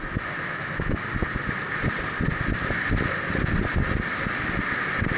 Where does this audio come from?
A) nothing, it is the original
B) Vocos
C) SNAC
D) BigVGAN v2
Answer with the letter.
A